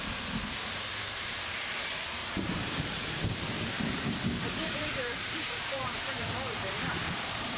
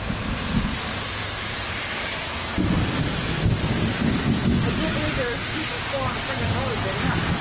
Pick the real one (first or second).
second